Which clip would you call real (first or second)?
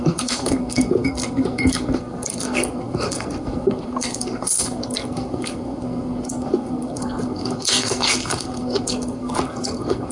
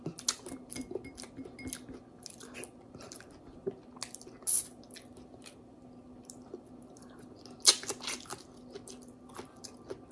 second